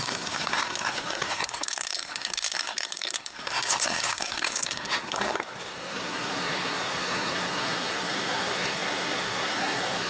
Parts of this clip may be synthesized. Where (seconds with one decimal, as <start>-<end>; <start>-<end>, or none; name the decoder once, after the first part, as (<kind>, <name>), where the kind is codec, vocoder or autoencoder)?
0.0-10.1 (codec, SNAC)